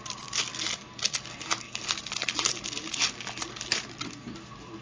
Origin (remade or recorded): recorded